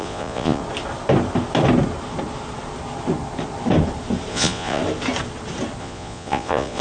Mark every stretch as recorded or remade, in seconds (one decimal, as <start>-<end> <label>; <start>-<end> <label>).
0.0-0.6 remade; 0.6-4.3 recorded; 4.3-4.8 remade; 4.8-5.8 recorded; 5.8-6.8 remade